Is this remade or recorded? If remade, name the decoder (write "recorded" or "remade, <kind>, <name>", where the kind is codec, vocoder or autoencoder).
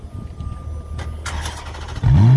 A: recorded